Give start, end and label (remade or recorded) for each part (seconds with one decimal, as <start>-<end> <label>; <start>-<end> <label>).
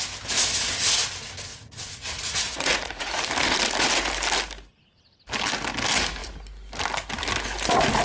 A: 0.0-1.5 recorded; 1.5-3.1 remade; 3.1-8.0 recorded